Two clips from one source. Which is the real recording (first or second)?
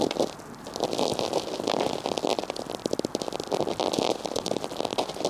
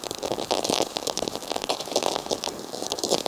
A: first